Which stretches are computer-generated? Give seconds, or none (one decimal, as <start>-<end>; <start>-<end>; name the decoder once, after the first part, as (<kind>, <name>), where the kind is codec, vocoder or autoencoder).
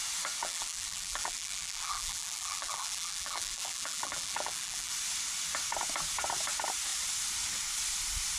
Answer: 0.4-4.9 (vocoder, BigVGAN v2)